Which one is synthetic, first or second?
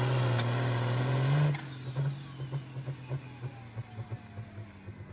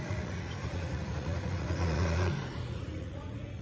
second